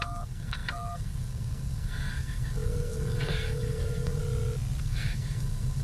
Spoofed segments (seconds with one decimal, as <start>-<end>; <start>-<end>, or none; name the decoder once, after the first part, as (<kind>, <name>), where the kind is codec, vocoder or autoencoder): 0.0-4.2 (codec, SNAC); 4.8-5.8